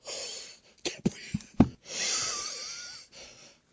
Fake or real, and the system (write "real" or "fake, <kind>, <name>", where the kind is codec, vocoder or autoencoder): real